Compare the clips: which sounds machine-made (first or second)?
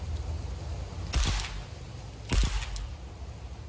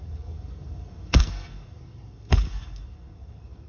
second